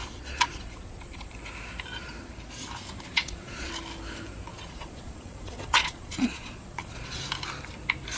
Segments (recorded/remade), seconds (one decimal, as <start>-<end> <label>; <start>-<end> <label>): 0.0-1.3 remade; 1.3-3.1 recorded; 3.1-3.7 remade; 3.7-4.5 recorded; 4.5-7.2 remade; 7.2-8.2 recorded